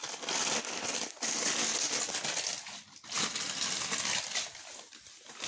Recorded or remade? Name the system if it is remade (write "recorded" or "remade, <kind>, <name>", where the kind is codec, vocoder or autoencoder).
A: recorded